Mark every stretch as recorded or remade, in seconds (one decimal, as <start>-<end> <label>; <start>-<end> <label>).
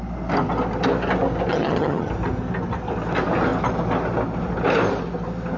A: 0.0-1.5 recorded; 1.5-2.1 remade; 2.1-5.6 recorded